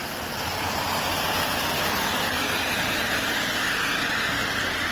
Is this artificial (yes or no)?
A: no